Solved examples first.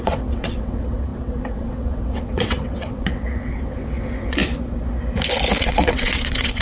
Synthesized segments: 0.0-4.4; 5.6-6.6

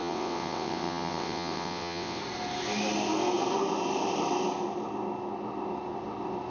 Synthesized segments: 0.0-2.2

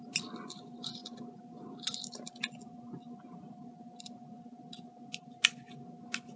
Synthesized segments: none

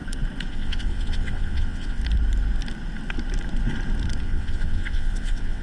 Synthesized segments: 0.5-2.0; 4.2-5.6

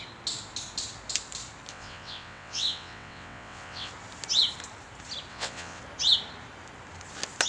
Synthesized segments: 1.7-3.9; 5.3-5.8

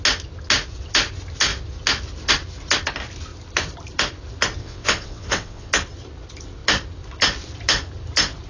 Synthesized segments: 4.6-5.7

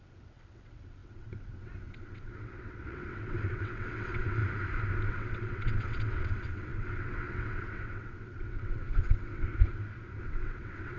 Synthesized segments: 0.0-4.4; 5.1-9.5; 10.2-11.0